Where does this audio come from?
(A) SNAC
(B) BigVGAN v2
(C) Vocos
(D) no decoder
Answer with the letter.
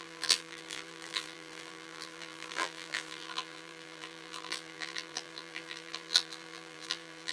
B